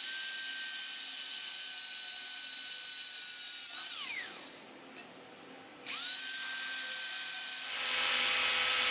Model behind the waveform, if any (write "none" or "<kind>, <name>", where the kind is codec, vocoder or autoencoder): none